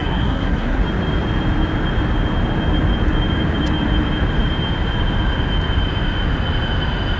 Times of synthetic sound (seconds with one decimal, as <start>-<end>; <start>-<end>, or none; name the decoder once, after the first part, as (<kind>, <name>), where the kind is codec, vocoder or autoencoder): 0.0-0.8 (codec, SNAC)